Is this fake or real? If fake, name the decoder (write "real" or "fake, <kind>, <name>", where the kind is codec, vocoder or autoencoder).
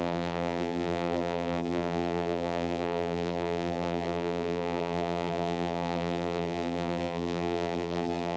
fake, vocoder, BigVGAN v2